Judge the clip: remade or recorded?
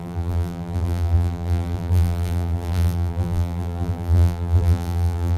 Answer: remade